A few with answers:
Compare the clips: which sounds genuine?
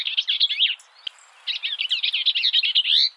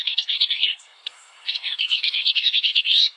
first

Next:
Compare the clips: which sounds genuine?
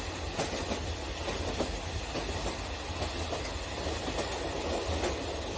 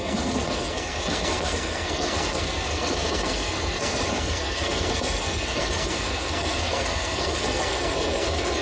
first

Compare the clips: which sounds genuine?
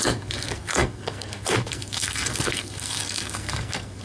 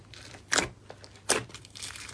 second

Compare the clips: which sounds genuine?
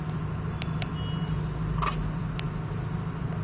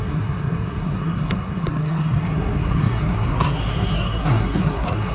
first